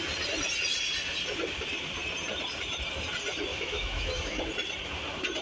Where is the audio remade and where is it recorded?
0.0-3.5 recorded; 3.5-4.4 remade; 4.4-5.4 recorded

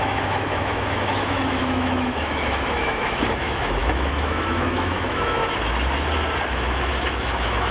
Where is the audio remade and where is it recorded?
0.0-5.4 remade; 5.4-6.5 recorded; 6.5-7.7 remade

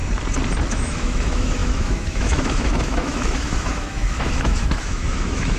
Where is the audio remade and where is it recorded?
0.0-0.7 recorded; 0.7-5.6 remade

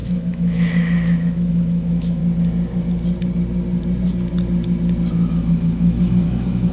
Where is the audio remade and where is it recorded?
0.0-2.2 remade; 2.2-5.3 recorded; 5.3-6.7 remade

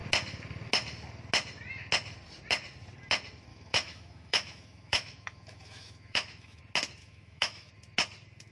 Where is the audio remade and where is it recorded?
0.0-3.5 recorded; 3.5-6.6 remade; 6.6-7.0 recorded; 7.0-7.7 remade; 7.7-8.5 recorded

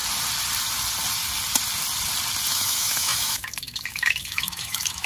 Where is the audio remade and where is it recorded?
0.0-2.5 recorded; 2.5-5.1 remade

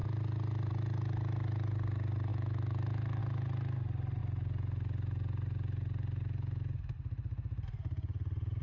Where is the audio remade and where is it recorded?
0.0-2.3 recorded; 2.3-3.2 remade; 3.2-8.6 recorded

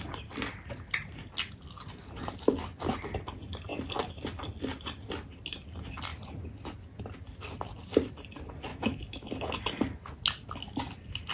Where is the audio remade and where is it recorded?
0.0-8.7 recorded; 8.7-9.3 remade; 9.3-11.3 recorded